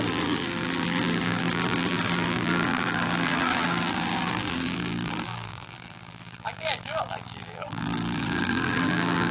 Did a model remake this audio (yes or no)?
yes